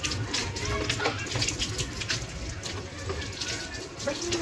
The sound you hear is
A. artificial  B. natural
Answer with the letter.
B